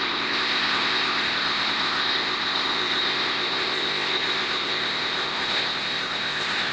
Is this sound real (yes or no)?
no